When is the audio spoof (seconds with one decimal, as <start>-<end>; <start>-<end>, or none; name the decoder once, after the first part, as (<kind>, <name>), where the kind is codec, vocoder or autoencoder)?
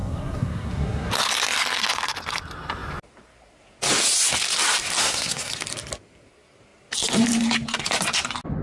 0.0-1.1 (codec, SNAC); 5.0-5.5